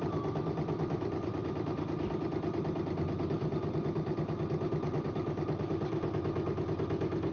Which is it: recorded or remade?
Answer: recorded